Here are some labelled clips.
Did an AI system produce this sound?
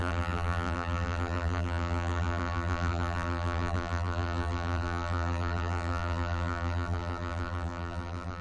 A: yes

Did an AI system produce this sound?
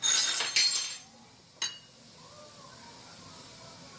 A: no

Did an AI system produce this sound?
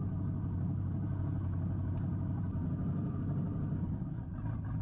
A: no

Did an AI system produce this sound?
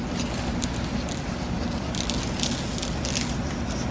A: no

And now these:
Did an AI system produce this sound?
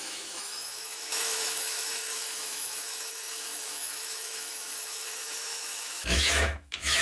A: yes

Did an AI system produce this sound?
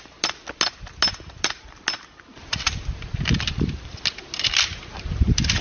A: no